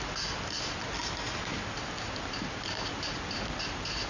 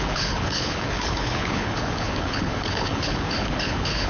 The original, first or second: first